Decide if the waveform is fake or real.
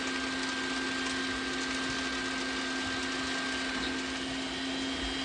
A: real